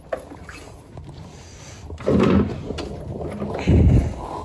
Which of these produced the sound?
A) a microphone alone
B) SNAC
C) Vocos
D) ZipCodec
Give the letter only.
A